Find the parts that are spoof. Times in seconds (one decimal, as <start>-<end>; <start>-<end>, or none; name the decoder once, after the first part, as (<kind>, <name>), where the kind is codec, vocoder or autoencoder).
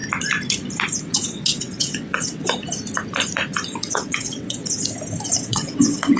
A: 1.0-2.6 (vocoder, WaveNeXt); 3.9-4.6; 5.4-6.2